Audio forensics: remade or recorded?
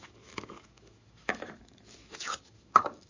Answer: remade